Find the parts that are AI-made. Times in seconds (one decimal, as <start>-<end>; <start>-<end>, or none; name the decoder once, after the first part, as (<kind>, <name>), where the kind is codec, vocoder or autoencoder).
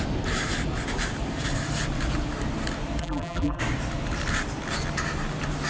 3.0-3.6 (vocoder, BigVGAN v2)